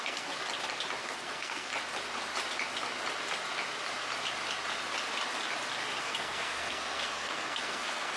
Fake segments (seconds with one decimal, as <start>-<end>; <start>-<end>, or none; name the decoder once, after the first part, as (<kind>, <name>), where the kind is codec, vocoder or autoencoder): 0.0-0.4 (codec, SNAC); 1.0-1.7; 6.0-8.2